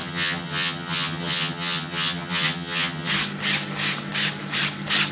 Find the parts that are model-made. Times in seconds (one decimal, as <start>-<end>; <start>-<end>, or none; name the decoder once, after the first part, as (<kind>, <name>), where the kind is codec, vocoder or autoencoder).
0.0-3.1 (vocoder, HiFi-GAN)